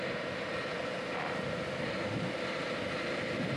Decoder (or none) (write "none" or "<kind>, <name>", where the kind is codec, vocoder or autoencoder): vocoder, BigVGAN v2